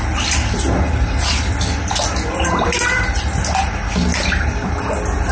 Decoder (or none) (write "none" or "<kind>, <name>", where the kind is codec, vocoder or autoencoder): none